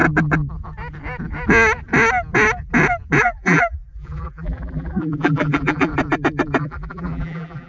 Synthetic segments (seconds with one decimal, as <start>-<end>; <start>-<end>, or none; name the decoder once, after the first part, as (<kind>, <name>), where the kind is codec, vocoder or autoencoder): 3.2-5.9 (vocoder, BigVGAN v2); 6.6-7.7